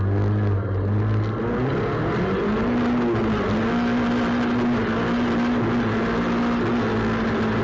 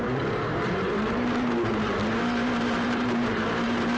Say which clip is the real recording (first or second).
first